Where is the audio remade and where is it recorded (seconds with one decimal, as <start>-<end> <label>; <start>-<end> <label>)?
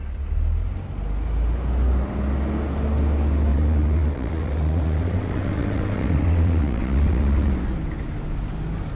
0.0-3.5 recorded; 3.5-7.5 remade; 7.5-8.9 recorded